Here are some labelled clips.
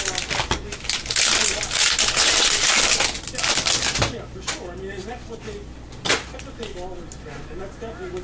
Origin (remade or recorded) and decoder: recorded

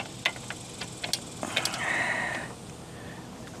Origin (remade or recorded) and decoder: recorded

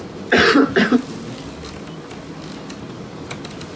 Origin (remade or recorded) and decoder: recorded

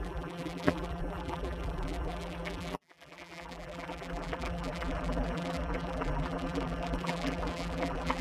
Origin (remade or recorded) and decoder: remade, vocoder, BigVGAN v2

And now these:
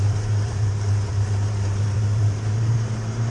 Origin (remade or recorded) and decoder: remade, vocoder, BigVGAN v2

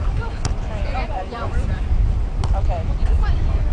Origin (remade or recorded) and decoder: remade, vocoder, BigVGAN v2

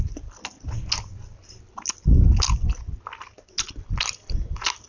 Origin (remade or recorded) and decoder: recorded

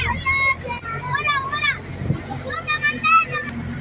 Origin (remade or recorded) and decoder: recorded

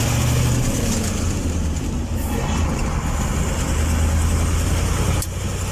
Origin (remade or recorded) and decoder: recorded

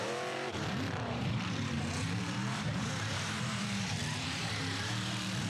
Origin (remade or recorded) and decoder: remade, vocoder, BigVGAN v2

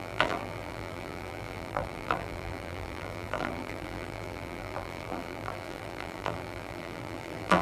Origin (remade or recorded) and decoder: remade, vocoder, BigVGAN v2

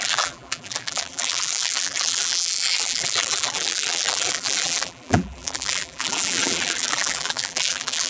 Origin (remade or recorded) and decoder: remade, vocoder, BigVGAN v2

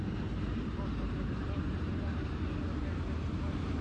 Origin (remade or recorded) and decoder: remade, vocoder, BigVGAN v2